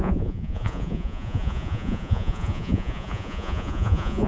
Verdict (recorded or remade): remade